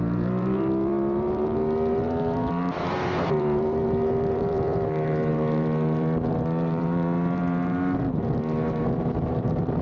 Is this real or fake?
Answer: fake